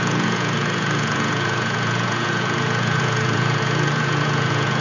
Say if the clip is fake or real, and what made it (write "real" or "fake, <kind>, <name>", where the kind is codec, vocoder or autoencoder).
fake, vocoder, Vocos